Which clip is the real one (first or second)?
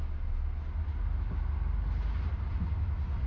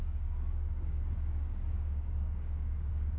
first